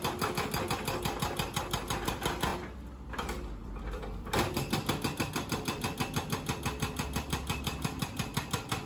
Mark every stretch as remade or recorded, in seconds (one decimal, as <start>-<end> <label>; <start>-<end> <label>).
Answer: 0.0-3.6 recorded; 3.6-8.5 remade; 8.5-8.9 recorded